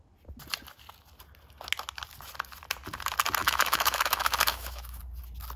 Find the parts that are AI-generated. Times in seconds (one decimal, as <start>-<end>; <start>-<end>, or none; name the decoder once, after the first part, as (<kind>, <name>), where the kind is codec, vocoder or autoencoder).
3.4-5.0 (autoencoder, DAC-VAE)